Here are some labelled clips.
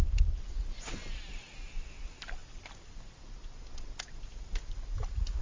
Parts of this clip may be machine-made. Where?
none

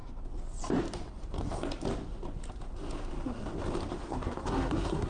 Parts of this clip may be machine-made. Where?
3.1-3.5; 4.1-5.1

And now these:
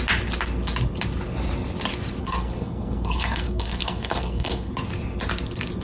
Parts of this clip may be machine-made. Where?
2.2-4.7

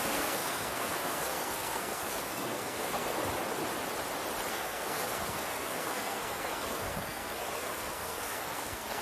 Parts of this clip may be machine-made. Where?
0.0-3.2; 4.5-9.0

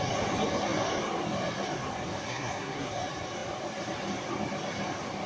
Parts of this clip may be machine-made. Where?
2.2-2.9

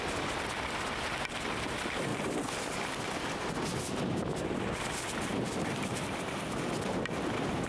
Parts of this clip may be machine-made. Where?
none